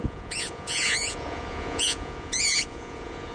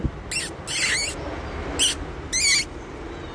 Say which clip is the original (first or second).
second